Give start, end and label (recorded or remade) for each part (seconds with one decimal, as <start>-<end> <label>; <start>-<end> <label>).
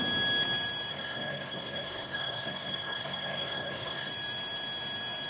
0.0-0.9 recorded; 0.9-4.1 remade; 4.1-5.3 recorded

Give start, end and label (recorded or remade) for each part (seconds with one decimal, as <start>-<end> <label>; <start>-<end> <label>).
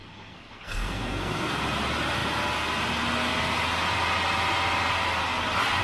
0.0-1.6 remade; 1.6-5.8 recorded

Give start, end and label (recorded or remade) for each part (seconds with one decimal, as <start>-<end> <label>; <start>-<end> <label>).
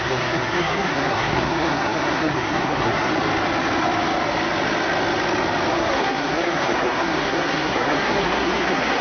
0.0-3.1 remade; 3.1-5.7 recorded; 5.7-9.0 remade